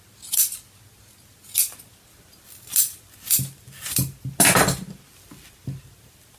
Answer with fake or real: real